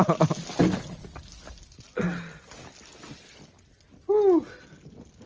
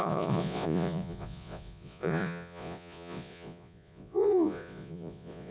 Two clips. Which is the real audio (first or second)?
first